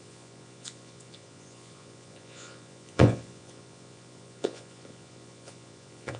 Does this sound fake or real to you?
fake